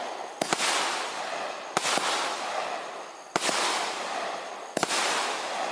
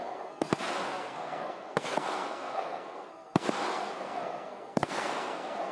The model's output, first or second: second